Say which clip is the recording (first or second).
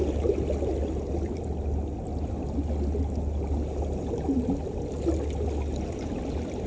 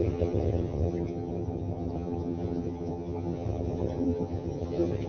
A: first